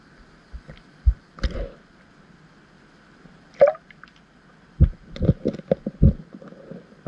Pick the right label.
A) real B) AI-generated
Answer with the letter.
A